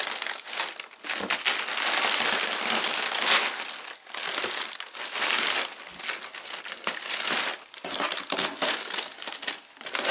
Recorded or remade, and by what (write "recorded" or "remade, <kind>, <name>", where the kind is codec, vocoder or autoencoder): recorded